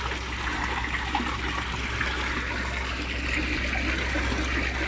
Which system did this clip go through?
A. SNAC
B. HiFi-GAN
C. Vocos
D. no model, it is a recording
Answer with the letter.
D